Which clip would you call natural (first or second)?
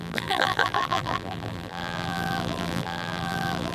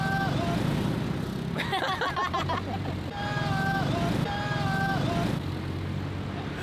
second